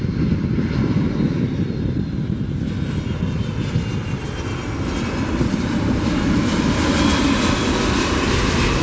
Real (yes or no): yes